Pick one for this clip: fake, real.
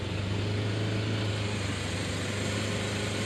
real